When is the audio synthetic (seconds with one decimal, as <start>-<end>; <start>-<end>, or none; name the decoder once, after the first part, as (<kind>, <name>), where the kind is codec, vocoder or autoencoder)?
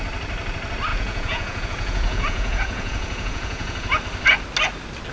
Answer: 0.9-4.0 (vocoder, Vocos)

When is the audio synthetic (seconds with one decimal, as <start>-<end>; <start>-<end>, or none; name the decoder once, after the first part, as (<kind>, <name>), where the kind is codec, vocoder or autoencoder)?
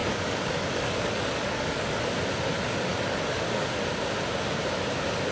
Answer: 0.0-2.0 (codec, DAC); 2.9-3.6